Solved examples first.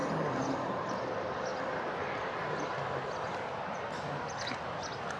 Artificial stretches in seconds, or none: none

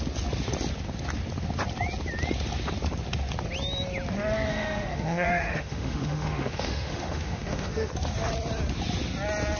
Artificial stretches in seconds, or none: 4.5-7.9 (autoencoder, DAC-VAE)

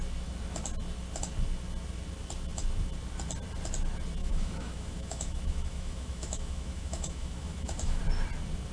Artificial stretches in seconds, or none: 4.2-8.0 (autoencoder, DAC-VAE)

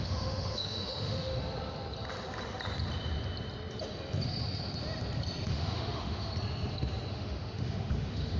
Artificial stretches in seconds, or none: 0.0-1.3 (autoencoder, DAC-VAE); 5.5-6.3; 7.1-8.4

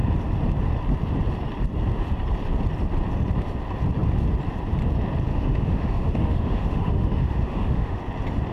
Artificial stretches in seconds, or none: 5.3-8.0 (autoencoder, DAC-VAE)

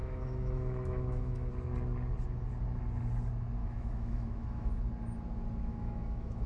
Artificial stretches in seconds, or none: 0.0-1.5 (autoencoder, DAC-VAE); 3.6-4.7; 5.7-6.5